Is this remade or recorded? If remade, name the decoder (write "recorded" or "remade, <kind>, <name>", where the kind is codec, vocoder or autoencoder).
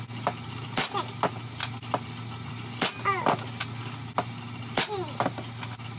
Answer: recorded